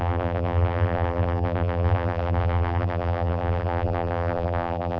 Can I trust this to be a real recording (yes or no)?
no